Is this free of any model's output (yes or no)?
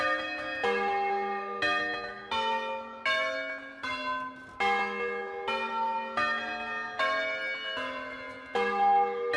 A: yes